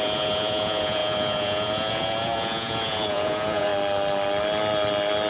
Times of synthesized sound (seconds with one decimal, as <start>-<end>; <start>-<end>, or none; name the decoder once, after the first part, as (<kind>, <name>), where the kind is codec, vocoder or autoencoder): 0.0-3.7 (vocoder, Vocos)